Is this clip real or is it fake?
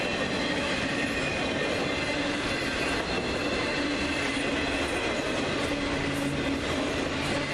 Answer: real